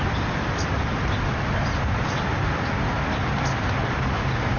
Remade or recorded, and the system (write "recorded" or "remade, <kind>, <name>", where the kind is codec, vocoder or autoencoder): recorded